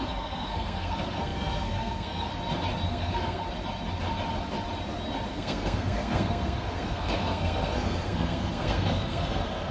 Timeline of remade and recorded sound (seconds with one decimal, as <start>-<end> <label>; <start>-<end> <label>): 0.0-2.3 remade; 2.3-2.9 recorded; 2.9-3.4 remade; 3.4-5.3 recorded; 5.3-9.7 remade